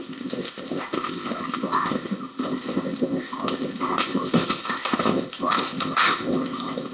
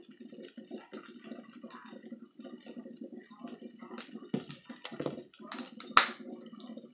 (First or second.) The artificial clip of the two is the first